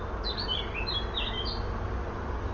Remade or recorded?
recorded